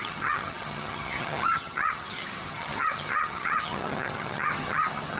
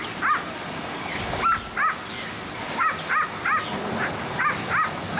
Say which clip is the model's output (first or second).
first